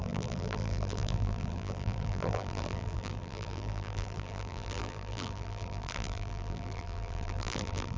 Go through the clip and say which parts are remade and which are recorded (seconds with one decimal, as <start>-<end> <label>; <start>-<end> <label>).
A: 0.0-8.0 remade